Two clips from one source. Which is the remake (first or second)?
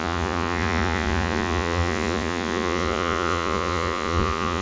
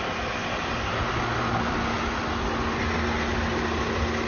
first